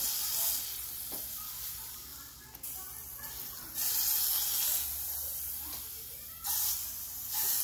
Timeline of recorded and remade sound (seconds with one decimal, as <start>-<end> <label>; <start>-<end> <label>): 0.0-7.6 recorded